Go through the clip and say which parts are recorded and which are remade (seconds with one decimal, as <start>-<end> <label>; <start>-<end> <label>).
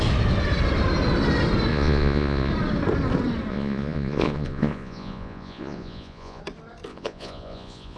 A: 0.0-1.7 recorded; 1.7-2.5 remade; 2.5-3.5 recorded; 3.5-6.4 remade; 6.4-6.9 recorded; 6.9-8.0 remade